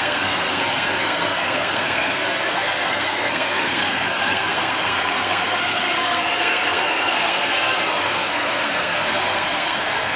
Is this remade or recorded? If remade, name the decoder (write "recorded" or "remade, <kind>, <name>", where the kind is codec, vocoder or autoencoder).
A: remade, codec, SNAC